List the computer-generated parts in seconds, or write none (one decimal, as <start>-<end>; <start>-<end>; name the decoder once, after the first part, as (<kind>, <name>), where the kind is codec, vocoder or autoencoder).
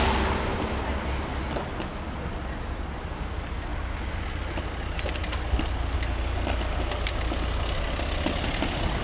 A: none